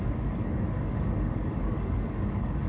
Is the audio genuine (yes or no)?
no